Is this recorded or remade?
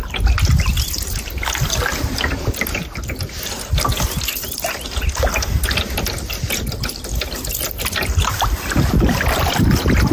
recorded